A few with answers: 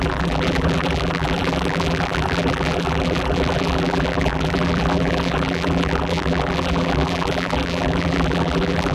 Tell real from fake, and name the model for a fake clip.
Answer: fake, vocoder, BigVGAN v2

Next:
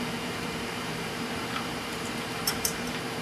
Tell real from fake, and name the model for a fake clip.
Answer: fake, vocoder, BigVGAN v2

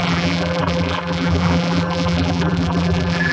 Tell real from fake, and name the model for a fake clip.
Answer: fake, vocoder, BigVGAN v2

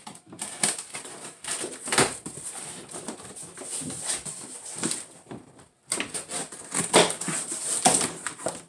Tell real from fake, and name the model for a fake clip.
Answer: fake, vocoder, BigVGAN v2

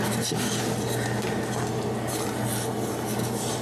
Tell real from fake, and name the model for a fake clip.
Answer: real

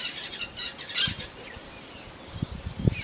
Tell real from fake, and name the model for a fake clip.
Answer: real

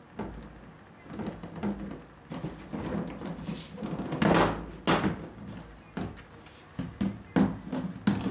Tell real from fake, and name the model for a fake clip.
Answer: real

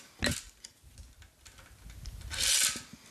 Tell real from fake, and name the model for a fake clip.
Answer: real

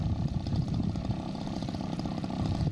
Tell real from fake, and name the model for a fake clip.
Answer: fake, vocoder, BigVGAN v2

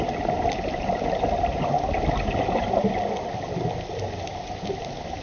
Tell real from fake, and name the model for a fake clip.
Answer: real